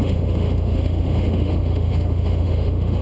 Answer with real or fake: fake